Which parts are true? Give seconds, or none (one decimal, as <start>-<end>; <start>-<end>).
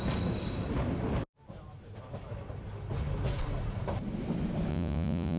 0.0-4.7